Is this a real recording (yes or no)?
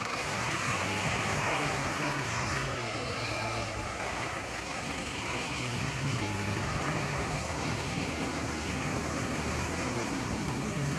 no